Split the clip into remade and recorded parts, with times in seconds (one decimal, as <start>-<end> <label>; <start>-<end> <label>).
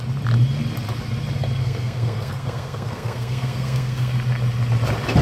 0.0-1.6 recorded; 1.6-4.1 remade; 4.1-5.2 recorded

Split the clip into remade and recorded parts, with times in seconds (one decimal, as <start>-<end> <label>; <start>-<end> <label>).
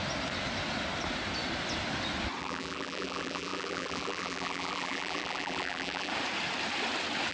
0.0-2.4 recorded; 2.4-6.1 remade; 6.1-7.3 recorded